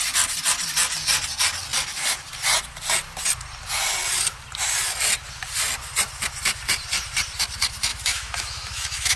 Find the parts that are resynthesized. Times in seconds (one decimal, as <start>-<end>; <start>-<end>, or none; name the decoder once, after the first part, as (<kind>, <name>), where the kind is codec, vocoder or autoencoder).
7.9-9.2 (autoencoder, DAC-VAE)

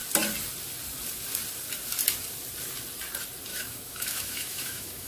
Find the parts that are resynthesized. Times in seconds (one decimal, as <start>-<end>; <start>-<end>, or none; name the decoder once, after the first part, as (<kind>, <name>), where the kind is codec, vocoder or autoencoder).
3.5-5.1 (autoencoder, DAC-VAE)

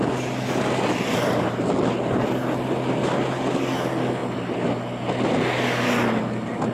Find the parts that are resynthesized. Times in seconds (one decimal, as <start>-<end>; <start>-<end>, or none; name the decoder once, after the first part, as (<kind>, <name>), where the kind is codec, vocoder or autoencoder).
none

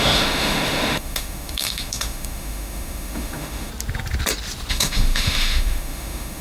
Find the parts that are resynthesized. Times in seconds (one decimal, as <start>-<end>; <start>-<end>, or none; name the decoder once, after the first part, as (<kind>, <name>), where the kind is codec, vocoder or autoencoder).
0.0-3.7 (autoencoder, DAC-VAE); 4.7-6.4

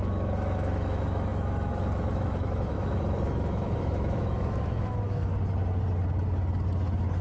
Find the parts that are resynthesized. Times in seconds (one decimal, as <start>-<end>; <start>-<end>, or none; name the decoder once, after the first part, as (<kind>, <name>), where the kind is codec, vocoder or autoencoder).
0.0-5.3 (autoencoder, DAC-VAE)

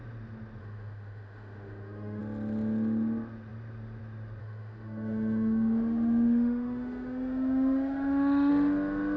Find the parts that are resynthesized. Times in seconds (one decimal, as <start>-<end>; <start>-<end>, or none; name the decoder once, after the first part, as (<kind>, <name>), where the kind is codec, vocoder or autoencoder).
0.6-2.2 (autoencoder, DAC-VAE); 4.4-8.5

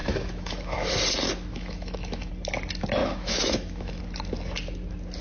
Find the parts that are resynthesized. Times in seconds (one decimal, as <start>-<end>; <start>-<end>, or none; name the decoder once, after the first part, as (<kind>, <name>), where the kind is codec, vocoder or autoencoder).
0.0-0.9 (autoencoder, DAC-VAE); 1.5-2.3; 3.0-4.0